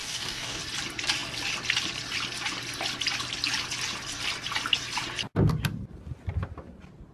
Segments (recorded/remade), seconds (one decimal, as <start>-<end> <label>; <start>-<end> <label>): 0.0-0.6 remade; 0.6-7.1 recorded

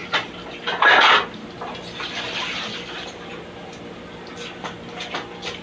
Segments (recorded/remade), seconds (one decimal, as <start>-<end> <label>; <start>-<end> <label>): 0.0-5.6 recorded

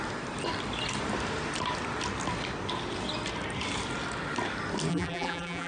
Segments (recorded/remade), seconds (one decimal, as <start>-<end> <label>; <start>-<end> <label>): 0.0-4.9 recorded; 4.9-5.7 remade

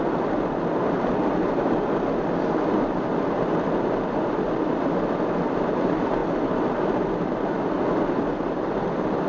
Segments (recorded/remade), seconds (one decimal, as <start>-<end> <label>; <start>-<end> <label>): 0.0-9.3 recorded

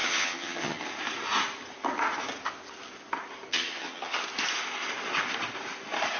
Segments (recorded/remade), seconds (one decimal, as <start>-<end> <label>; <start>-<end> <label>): 0.0-0.9 remade; 0.9-3.5 recorded; 3.5-4.2 remade; 4.2-6.2 recorded